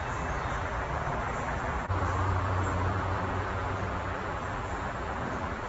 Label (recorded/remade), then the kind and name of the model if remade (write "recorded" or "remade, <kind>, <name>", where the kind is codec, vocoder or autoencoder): remade, vocoder, BigVGAN v2